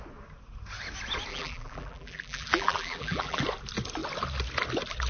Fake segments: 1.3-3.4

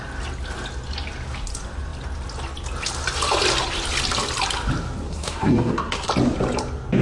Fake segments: 5.1-6.1